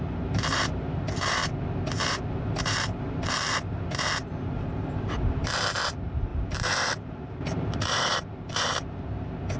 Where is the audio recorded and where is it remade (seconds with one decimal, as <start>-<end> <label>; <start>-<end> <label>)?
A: 0.0-1.4 remade; 1.4-2.1 recorded; 2.1-9.6 remade